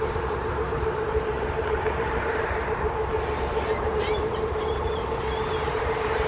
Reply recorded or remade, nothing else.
remade